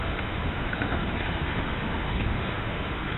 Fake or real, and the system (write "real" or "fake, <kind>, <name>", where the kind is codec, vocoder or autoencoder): fake, autoencoder, DAC-VAE